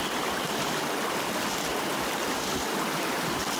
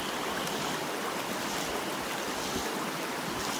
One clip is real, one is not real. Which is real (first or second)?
second